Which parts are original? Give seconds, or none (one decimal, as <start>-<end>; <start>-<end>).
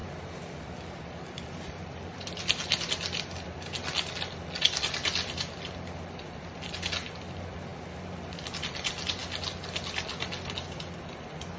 2.8-7.7; 8.3-11.6